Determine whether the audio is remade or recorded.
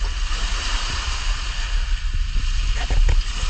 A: recorded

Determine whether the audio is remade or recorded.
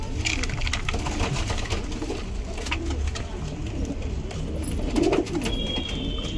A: recorded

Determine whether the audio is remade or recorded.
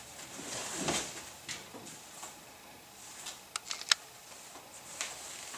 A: recorded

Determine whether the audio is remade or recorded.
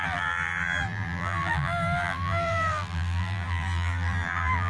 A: remade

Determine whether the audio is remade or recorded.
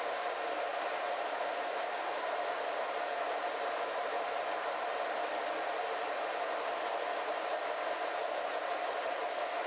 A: recorded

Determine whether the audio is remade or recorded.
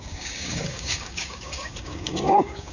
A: remade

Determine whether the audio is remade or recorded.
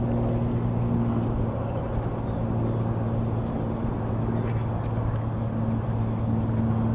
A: recorded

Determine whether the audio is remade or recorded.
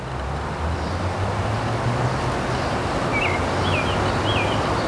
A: recorded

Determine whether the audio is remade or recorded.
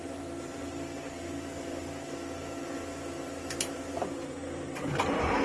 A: recorded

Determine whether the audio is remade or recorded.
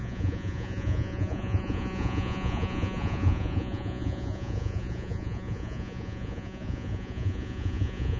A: remade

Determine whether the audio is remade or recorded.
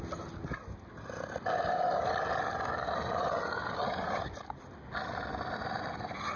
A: recorded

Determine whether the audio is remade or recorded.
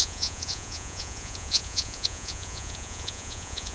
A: remade